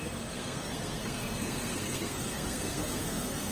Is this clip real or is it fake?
fake